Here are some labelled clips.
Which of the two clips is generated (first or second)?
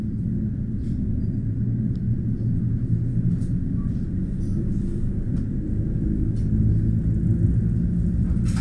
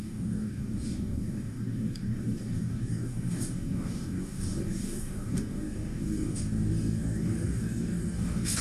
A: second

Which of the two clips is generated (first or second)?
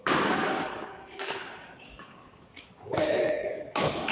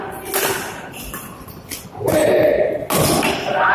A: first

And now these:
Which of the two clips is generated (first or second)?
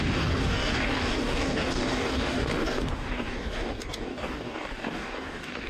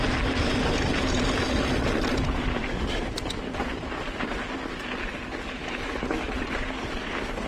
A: first